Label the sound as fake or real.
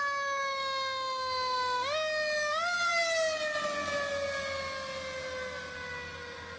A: real